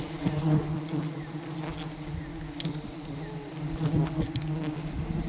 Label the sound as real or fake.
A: real